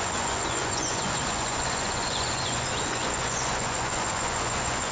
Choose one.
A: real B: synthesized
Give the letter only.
B